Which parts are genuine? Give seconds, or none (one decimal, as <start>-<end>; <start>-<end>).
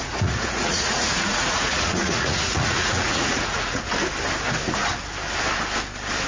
3.8-6.3